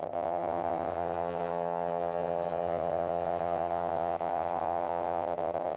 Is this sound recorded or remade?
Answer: remade